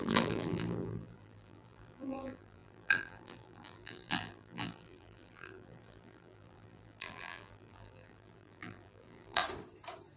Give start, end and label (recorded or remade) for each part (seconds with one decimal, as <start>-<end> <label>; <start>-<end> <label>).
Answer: 0.0-9.4 remade; 9.4-10.2 recorded